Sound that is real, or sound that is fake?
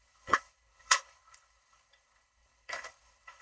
fake